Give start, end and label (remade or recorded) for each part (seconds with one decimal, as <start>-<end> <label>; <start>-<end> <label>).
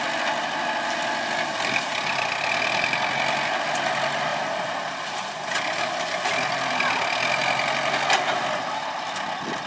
0.0-4.3 recorded; 4.3-5.1 remade; 5.1-9.7 recorded